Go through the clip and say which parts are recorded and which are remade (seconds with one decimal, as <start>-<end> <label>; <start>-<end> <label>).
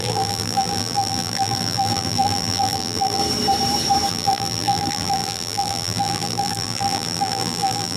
0.0-3.2 remade; 3.2-4.1 recorded; 4.1-8.0 remade